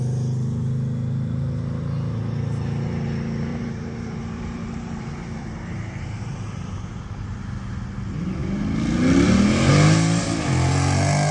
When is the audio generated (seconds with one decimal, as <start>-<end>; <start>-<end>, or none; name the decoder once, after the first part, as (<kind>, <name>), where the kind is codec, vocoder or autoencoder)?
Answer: 3.5-7.0 (vocoder, BigVGAN v2)